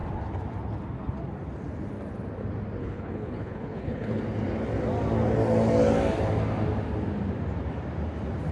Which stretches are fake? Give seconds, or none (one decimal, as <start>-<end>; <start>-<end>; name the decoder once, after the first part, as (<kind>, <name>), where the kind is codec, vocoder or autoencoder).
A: 2.8-4.2 (codec, HILCodec)